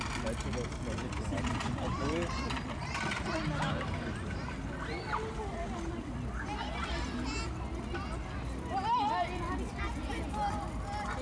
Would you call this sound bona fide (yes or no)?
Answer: yes